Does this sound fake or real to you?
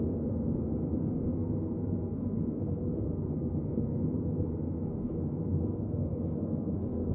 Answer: fake